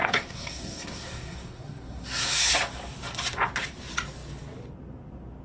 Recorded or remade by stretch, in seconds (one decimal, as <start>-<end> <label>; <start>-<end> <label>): 0.0-2.5 remade; 2.5-5.4 recorded